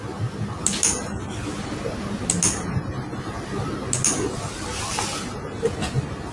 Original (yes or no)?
yes